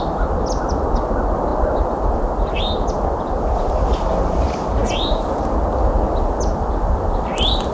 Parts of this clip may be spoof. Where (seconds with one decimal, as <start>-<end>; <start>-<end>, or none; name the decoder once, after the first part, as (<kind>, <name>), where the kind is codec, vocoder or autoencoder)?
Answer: none